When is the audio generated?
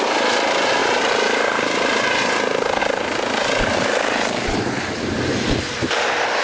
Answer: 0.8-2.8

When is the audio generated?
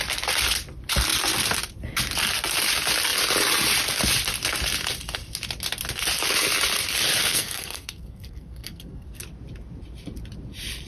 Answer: 7.2-9.2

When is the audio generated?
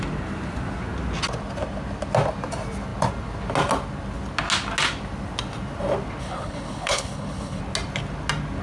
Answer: 6.2-7.6